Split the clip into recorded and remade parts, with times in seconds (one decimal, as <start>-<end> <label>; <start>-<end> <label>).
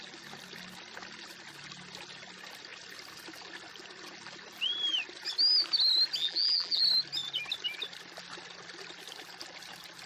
0.0-6.2 recorded; 6.2-6.8 remade; 6.8-10.1 recorded